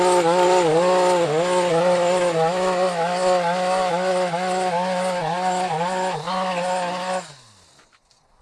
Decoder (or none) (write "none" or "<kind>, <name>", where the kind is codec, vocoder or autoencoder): none